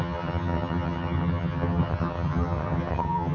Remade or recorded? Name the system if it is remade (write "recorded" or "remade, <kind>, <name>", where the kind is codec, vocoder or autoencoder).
remade, vocoder, HiFi-GAN